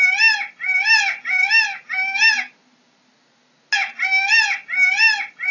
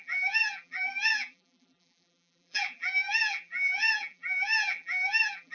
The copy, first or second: second